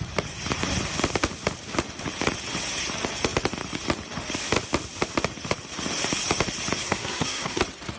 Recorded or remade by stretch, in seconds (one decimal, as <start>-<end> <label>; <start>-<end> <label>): 0.0-6.8 recorded; 6.8-7.6 remade; 7.6-8.0 recorded